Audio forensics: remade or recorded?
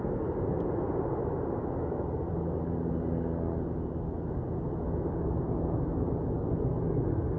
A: recorded